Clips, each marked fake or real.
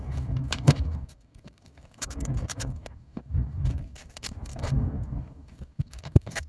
fake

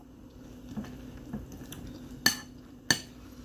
real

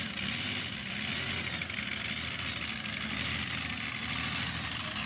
real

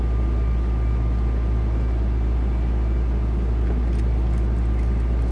real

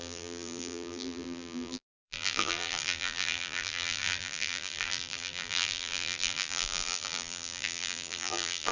fake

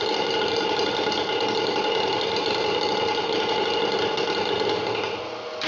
real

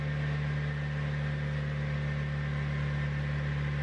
real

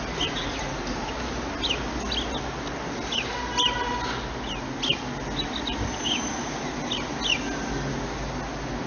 real